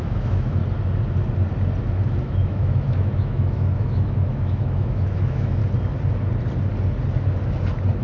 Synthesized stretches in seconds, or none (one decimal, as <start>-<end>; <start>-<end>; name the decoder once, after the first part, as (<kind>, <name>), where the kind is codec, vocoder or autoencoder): 0.0-0.6 (autoencoder, DAC-VAE); 2.2-5.6